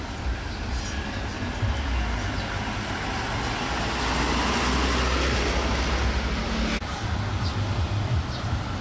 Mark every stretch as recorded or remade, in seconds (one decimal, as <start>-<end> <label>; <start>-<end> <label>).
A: 0.0-8.8 recorded